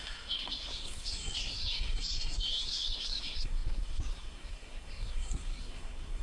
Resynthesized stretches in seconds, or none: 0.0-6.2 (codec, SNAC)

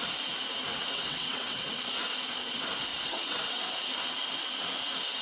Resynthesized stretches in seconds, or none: 0.8-1.7 (vocoder, WaveNeXt); 2.9-3.6

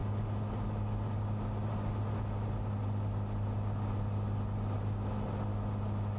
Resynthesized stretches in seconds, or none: none

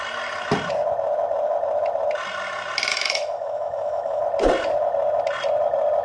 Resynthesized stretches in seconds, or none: 2.9-4.2 (autoencoder, DAC-VAE)

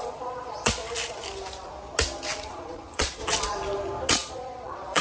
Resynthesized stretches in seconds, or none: 0.0-0.8 (vocoder, Vocos); 2.5-3.2; 4.1-5.0